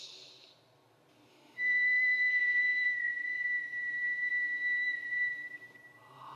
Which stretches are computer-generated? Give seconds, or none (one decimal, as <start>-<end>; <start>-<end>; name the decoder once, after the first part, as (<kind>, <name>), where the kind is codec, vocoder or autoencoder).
1.3-2.3 (autoencoder, DAC-VAE)